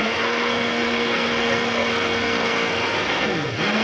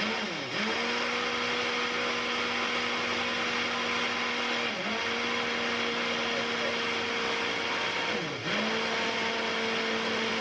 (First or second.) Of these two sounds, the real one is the second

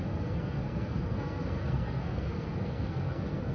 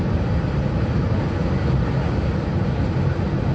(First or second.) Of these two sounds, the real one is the second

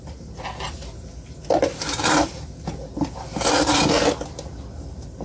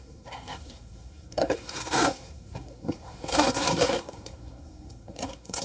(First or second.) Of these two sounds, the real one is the first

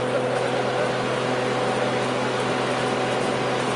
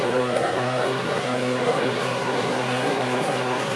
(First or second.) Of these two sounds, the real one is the first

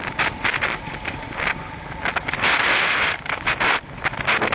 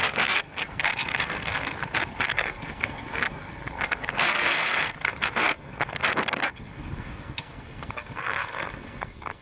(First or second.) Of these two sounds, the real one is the first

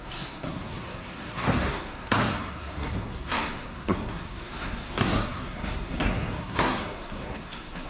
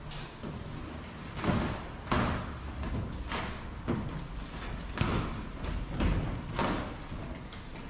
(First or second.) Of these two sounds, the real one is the second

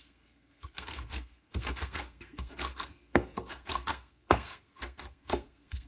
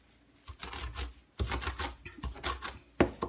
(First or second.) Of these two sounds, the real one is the second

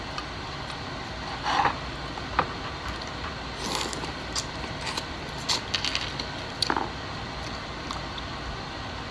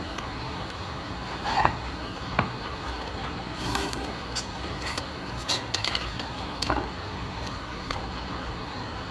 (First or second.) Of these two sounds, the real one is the first